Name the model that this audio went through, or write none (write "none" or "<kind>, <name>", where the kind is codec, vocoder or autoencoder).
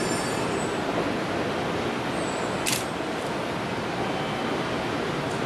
none